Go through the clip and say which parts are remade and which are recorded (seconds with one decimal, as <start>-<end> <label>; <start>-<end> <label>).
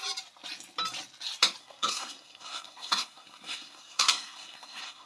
0.0-1.6 recorded; 1.6-5.1 remade